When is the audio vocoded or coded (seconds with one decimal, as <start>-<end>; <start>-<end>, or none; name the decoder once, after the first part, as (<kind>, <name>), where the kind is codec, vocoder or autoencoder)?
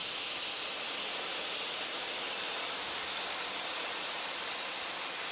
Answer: none